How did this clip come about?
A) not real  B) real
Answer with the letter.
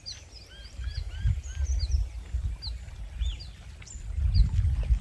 B